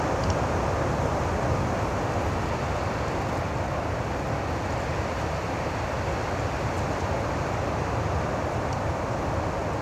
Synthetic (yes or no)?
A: no